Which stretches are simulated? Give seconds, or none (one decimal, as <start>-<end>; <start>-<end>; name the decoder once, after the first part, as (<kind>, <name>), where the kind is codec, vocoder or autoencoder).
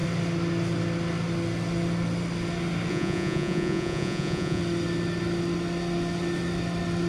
2.9-4.6 (vocoder, Vocos)